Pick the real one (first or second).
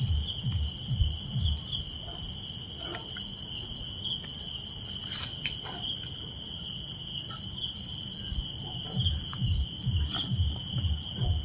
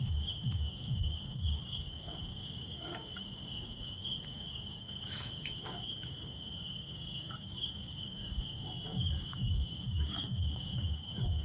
first